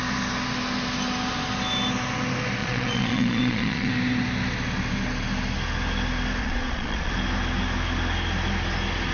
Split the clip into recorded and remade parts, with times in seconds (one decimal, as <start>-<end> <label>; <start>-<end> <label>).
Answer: 0.0-2.6 recorded; 2.6-3.9 remade; 3.9-6.4 recorded; 6.4-7.1 remade; 7.1-9.1 recorded